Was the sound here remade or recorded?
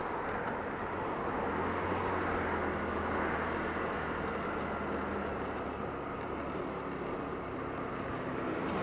recorded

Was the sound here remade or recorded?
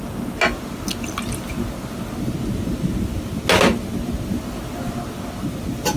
recorded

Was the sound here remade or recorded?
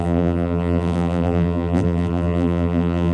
remade